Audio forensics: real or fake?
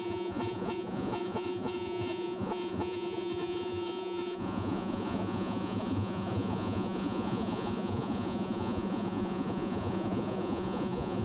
fake